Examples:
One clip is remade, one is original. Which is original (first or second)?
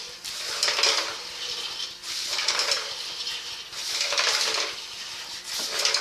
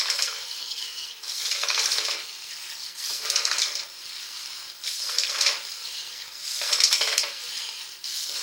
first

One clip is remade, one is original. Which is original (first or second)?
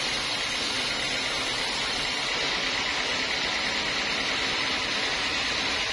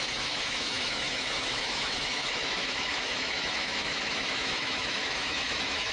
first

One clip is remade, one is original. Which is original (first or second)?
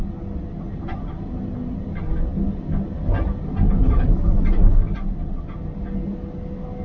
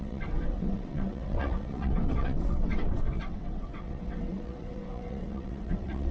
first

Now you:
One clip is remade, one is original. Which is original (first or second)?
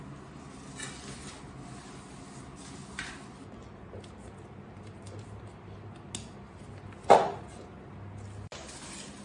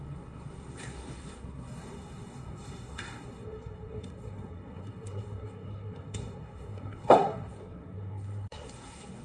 first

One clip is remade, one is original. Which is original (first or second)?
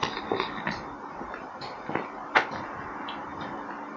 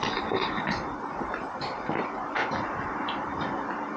first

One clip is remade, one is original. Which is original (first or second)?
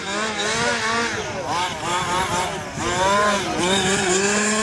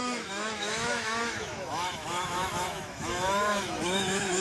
first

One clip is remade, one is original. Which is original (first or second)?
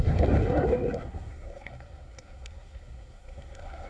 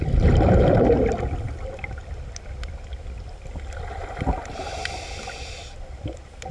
second